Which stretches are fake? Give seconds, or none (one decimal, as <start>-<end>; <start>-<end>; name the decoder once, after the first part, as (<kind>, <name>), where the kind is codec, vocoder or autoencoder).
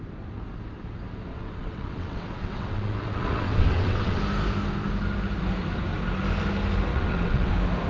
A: 1.3-4.2 (vocoder, WaveNeXt); 6.9-7.5